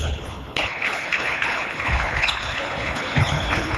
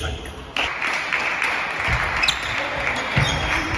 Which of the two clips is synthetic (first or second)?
first